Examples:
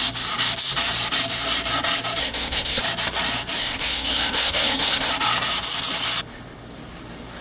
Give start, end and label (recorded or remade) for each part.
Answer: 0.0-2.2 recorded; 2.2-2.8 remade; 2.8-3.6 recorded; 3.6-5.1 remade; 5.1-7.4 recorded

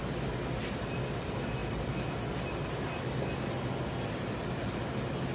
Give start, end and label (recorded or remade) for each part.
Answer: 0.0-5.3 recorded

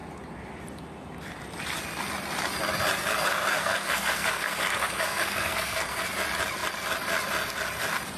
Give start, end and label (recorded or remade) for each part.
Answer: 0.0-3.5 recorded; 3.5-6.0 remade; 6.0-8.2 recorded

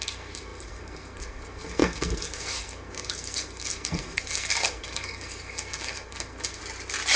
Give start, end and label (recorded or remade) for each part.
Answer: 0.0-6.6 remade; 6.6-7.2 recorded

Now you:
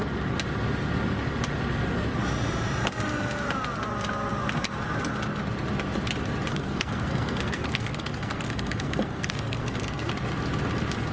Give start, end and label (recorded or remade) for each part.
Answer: 0.0-6.5 recorded; 6.5-10.1 remade; 10.1-11.1 recorded